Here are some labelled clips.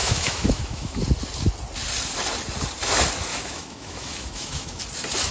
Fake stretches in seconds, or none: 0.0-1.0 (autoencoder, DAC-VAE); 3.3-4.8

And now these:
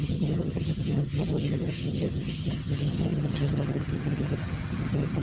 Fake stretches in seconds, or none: 0.0-5.2 (vocoder, HiFi-GAN)

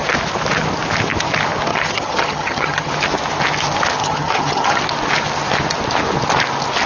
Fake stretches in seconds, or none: 1.7-2.9 (vocoder, HiFi-GAN); 4.0-4.8